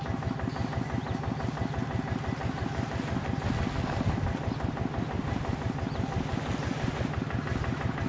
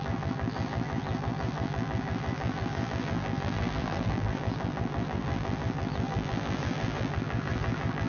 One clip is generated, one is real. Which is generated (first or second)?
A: second